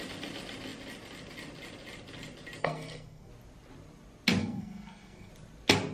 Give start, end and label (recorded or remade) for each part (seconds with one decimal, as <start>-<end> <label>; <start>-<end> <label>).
0.0-2.6 recorded; 2.6-3.3 remade; 3.3-4.4 recorded; 4.4-5.3 remade; 5.3-5.9 recorded